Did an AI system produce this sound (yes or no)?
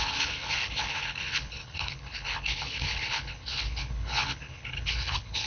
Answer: yes